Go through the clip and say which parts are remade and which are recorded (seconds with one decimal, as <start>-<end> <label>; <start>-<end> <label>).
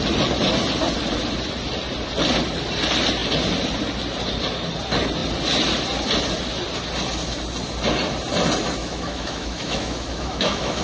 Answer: 0.0-8.8 recorded; 8.8-10.8 remade